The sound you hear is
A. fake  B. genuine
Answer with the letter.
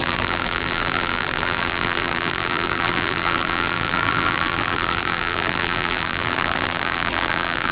A